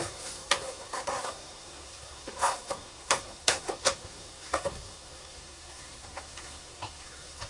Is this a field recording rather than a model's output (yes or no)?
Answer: no